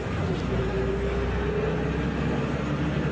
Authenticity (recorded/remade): recorded